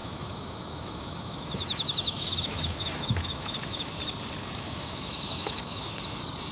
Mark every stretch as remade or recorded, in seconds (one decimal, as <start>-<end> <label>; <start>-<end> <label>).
0.0-3.9 remade; 3.9-4.4 recorded; 4.4-6.0 remade; 6.0-6.5 recorded